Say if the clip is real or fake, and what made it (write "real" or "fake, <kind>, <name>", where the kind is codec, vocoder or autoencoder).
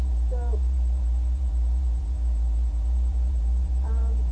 fake, vocoder, BigVGAN v2